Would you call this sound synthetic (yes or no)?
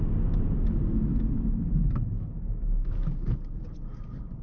no